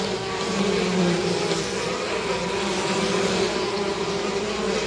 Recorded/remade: recorded